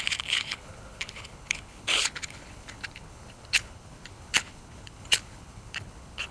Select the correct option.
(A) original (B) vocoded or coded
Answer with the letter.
B